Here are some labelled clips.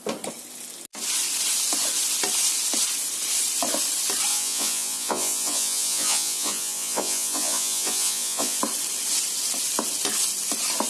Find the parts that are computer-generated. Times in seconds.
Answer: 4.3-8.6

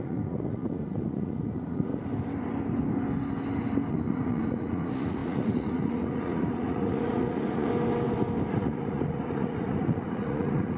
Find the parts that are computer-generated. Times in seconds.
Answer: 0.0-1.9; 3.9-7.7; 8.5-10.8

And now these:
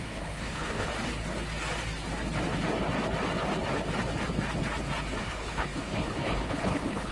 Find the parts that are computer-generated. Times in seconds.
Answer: 0.0-0.9; 5.2-7.1